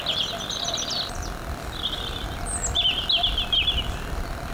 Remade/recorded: recorded